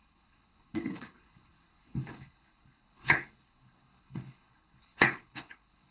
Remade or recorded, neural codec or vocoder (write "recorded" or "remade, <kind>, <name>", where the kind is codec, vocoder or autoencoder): remade, codec, HILCodec